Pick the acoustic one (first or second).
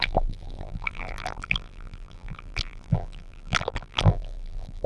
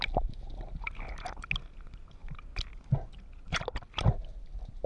second